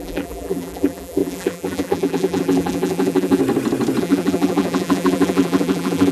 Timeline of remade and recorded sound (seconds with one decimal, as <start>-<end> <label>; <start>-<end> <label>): 0.0-3.4 remade; 3.4-4.0 recorded; 4.0-6.1 remade